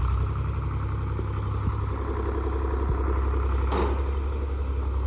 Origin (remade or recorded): recorded